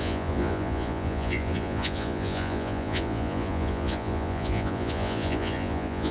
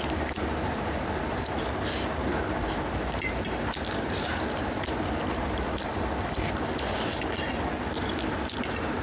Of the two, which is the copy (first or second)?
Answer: first